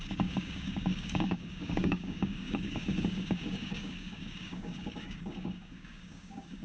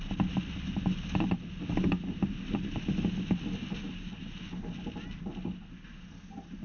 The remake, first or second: first